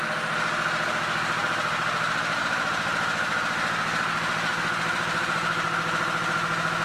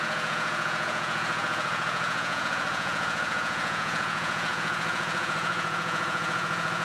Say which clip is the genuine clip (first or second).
first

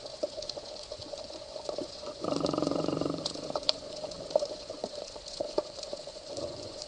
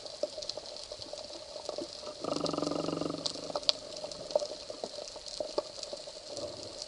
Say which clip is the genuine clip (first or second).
second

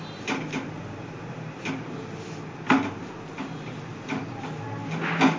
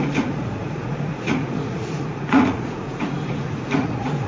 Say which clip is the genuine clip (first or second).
first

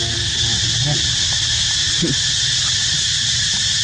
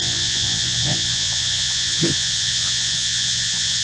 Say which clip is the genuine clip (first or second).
first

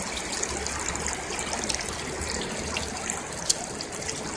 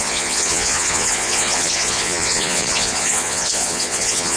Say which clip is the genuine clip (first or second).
first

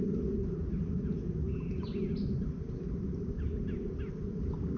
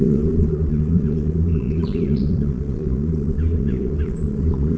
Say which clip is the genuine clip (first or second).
first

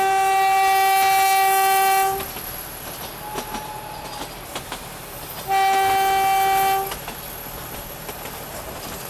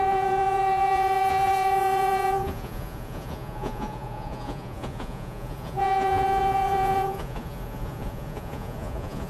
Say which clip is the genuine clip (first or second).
first